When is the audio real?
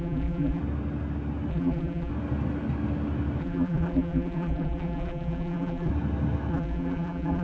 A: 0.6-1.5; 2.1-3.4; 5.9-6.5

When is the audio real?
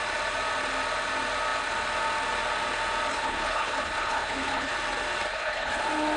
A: 0.0-3.1; 4.7-5.3; 5.8-6.2